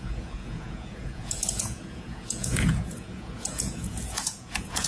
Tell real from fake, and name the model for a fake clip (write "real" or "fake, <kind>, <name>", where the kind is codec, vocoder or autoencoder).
fake, vocoder, Vocos